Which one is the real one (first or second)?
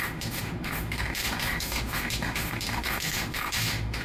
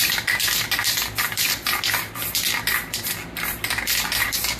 second